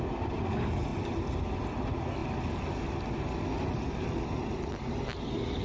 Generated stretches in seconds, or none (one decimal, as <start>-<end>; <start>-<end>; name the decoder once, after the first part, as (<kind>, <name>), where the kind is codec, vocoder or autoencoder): 0.9-1.5 (vocoder, BigVGAN v2)